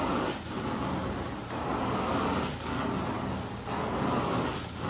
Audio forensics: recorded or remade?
recorded